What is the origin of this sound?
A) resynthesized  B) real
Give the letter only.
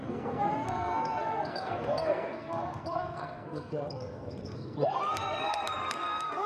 A